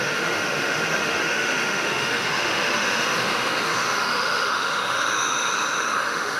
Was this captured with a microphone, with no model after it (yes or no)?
no